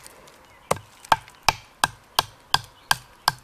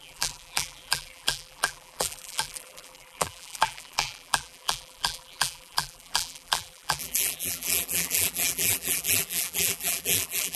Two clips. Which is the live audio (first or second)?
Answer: first